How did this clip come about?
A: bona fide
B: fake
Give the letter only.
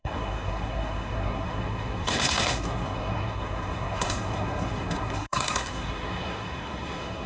B